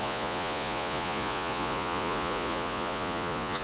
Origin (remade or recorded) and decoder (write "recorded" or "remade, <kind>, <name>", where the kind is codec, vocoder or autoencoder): remade, vocoder, Vocos